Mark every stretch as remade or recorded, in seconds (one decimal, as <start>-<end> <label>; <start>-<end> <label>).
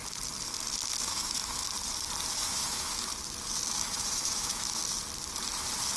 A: 0.0-1.0 recorded; 1.0-1.6 remade; 1.6-2.4 recorded; 2.4-3.1 remade; 3.1-3.7 recorded; 3.7-4.8 remade; 4.8-6.0 recorded